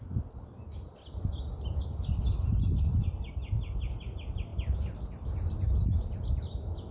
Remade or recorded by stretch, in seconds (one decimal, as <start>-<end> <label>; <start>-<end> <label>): 0.0-6.9 recorded